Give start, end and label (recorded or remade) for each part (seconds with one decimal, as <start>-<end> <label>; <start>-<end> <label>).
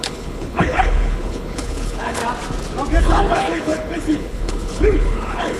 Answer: 0.0-2.2 remade; 2.2-3.0 recorded; 3.0-5.6 remade